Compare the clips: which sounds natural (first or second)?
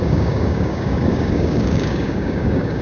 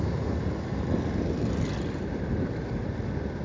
second